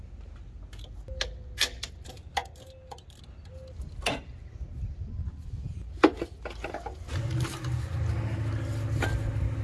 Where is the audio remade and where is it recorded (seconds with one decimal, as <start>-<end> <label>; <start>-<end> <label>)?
0.0-9.6 recorded

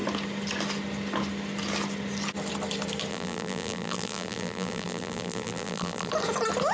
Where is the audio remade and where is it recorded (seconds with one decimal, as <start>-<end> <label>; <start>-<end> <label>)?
0.0-3.1 recorded; 3.1-6.1 remade; 6.1-6.7 recorded

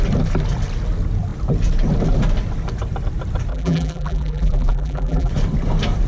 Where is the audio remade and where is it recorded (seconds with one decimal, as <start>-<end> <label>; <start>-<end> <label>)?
0.0-3.5 recorded; 3.5-5.3 remade; 5.3-6.1 recorded